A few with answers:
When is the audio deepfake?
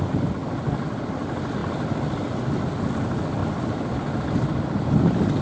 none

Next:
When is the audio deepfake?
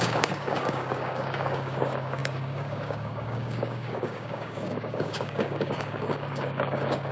0.0-7.1 (codec, DAC)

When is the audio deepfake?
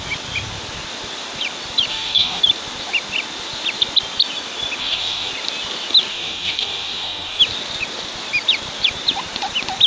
1.9-2.4 (codec, DAC); 4.8-5.3; 6.1-7.4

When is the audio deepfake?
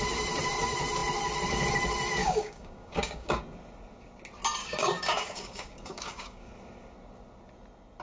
2.2-3.4 (codec, DAC); 4.6-6.5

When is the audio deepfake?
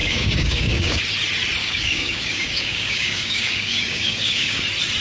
0.0-1.0 (codec, DAC); 1.6-4.6